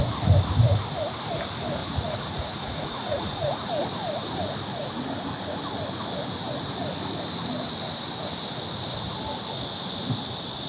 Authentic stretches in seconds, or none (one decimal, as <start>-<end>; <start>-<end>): 0.0-1.8; 3.7-10.7